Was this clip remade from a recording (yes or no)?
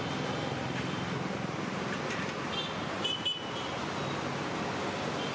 no